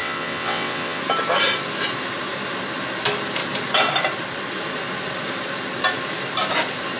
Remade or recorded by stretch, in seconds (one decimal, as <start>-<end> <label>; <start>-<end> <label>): 0.0-1.0 remade; 1.0-7.0 recorded

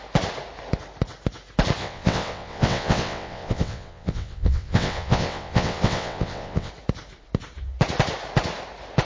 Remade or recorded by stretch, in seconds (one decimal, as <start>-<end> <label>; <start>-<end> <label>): 0.0-1.8 recorded; 1.8-6.7 remade; 6.7-9.1 recorded

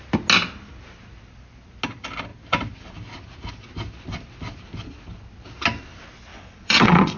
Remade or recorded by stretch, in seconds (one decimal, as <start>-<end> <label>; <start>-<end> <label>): 0.0-6.3 recorded; 6.3-7.2 remade

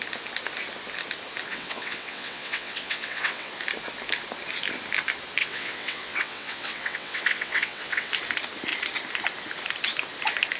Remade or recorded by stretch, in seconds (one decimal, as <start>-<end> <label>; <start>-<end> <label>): 0.0-1.5 recorded; 1.5-3.5 remade; 3.5-5.4 recorded; 5.4-8.1 remade; 8.1-10.6 recorded

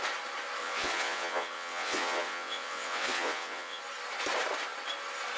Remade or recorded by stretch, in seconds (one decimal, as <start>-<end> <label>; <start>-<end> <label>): 0.0-0.6 recorded; 0.6-3.8 remade; 3.8-5.4 recorded